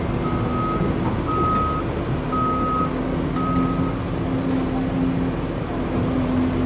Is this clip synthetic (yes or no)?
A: no